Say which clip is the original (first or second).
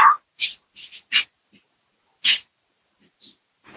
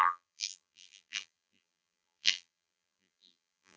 first